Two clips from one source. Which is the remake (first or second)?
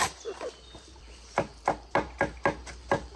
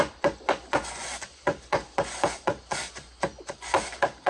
second